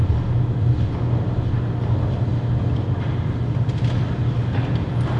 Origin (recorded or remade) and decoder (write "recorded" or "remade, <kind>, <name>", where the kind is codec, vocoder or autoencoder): recorded